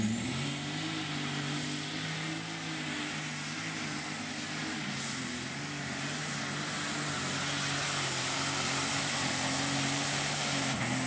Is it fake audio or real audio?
real